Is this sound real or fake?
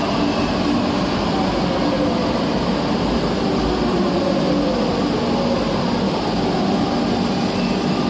real